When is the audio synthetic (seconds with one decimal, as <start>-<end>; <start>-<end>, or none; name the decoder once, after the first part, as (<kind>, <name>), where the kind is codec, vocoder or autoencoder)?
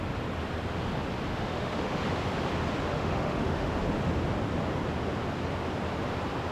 1.3-2.0 (autoencoder, DAC-VAE); 2.9-3.7